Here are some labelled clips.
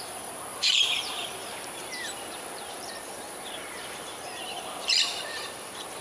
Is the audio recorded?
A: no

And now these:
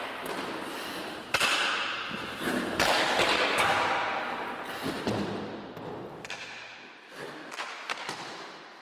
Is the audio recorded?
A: yes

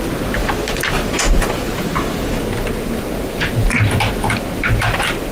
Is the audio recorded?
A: no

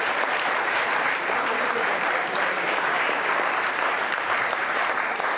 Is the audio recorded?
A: no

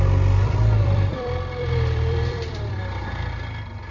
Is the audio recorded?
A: no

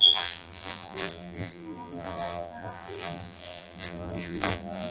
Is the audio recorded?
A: no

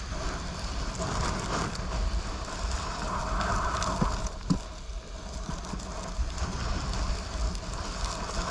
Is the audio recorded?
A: yes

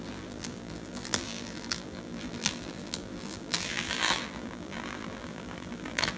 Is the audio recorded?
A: no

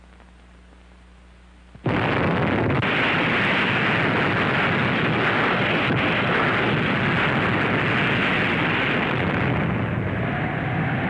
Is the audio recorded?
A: yes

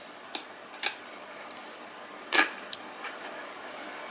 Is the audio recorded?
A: no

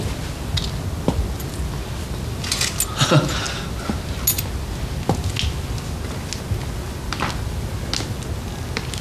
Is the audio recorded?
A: yes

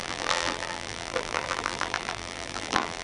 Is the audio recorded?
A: no